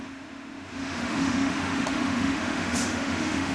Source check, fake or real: fake